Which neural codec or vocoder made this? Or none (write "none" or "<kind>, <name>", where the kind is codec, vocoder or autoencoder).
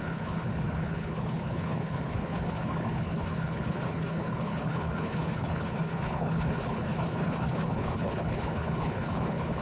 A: codec, HILCodec